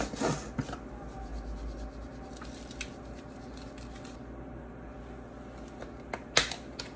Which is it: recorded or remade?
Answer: recorded